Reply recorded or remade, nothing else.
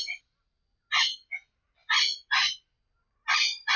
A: recorded